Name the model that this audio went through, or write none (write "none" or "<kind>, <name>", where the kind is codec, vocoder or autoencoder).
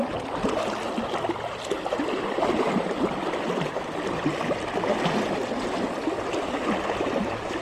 none